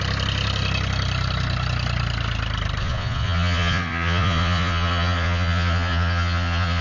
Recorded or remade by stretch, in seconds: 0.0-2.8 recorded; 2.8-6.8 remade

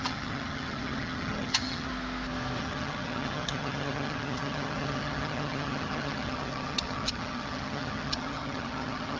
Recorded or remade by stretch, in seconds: 0.0-1.9 remade; 1.9-2.6 recorded; 2.6-9.2 remade

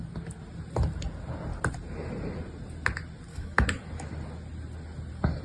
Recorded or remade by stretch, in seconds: 0.0-3.3 recorded; 3.3-4.1 remade; 4.1-5.4 recorded

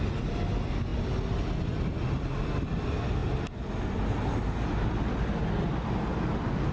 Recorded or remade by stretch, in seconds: 0.0-6.7 recorded